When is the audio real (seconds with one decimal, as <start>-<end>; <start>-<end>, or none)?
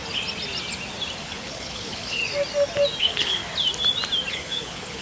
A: 0.0-1.2; 2.2-3.0; 3.4-4.3